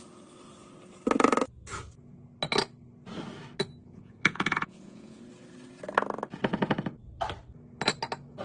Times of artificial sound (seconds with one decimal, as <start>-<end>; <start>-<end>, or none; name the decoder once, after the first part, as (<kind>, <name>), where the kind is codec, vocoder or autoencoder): 3.8-5.2 (vocoder, Vocos)